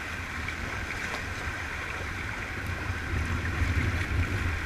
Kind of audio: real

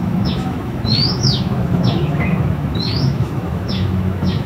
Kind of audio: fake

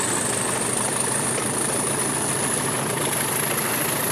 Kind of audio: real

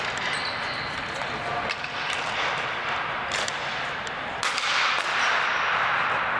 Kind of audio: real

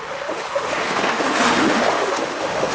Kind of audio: fake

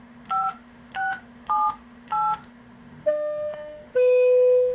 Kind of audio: fake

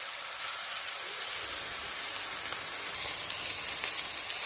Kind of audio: real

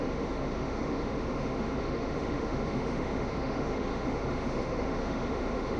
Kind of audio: fake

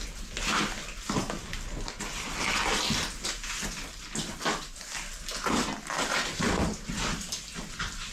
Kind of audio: real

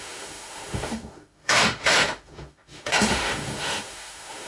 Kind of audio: fake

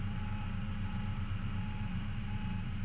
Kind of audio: real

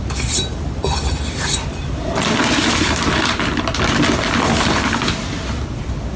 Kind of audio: real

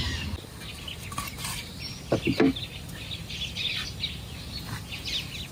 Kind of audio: real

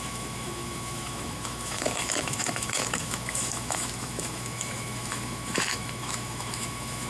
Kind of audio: fake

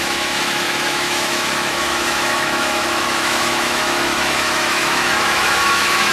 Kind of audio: fake